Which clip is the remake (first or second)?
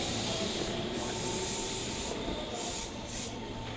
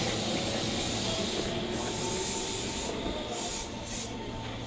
first